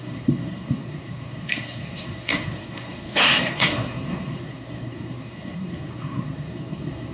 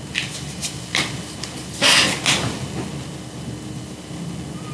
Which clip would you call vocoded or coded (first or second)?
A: first